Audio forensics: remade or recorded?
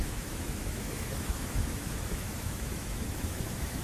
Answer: remade